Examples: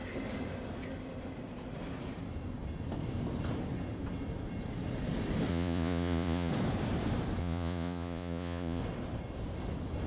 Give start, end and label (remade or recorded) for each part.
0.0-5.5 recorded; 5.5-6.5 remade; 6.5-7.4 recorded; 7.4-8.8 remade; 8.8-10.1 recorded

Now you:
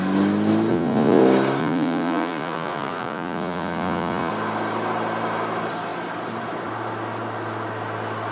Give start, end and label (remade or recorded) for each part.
0.0-0.7 recorded; 0.7-1.2 remade; 1.2-1.6 recorded; 1.6-4.3 remade; 4.3-8.3 recorded

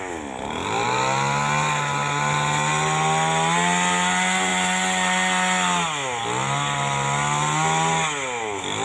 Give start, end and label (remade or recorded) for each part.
0.0-8.8 recorded

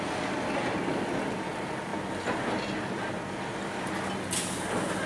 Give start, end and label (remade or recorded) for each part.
0.0-5.1 recorded

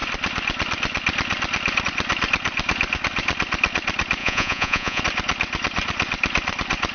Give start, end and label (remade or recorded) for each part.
0.0-4.2 recorded; 4.2-5.0 remade; 5.0-6.9 recorded

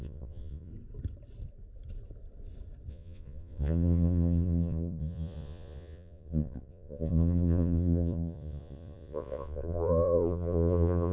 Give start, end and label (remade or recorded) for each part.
0.0-0.7 remade; 0.7-2.9 recorded; 2.9-11.1 remade

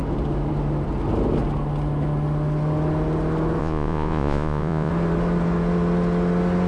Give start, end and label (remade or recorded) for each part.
0.0-3.6 recorded; 3.6-4.9 remade; 4.9-6.7 recorded

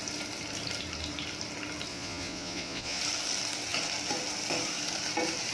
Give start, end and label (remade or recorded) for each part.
0.0-1.9 recorded; 1.9-3.0 remade; 3.0-5.5 recorded